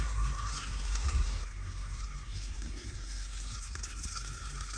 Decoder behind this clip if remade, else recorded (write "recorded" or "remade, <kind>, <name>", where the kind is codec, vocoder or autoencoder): remade, codec, SNAC